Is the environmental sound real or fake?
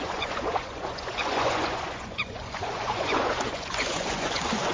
fake